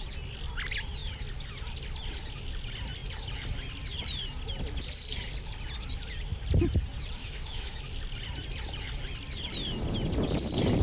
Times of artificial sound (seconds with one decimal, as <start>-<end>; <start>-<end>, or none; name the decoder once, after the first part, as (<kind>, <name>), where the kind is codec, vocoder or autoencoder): 7.2-7.8 (autoencoder, DAC-VAE)